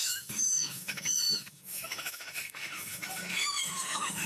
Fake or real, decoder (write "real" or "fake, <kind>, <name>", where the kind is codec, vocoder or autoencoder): fake, autoencoder, DAC-VAE